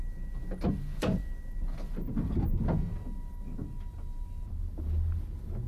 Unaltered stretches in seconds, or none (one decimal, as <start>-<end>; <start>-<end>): 0.0-5.7